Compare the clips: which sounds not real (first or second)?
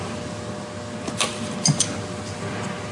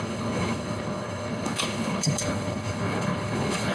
second